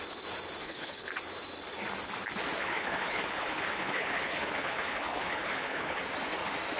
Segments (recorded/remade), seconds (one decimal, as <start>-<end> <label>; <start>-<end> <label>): 0.0-0.6 recorded; 0.6-1.1 remade; 1.1-2.6 recorded; 2.6-6.0 remade; 6.0-6.8 recorded